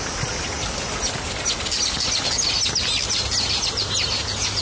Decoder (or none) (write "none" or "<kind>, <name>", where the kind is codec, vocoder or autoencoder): none